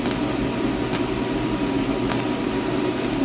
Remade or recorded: recorded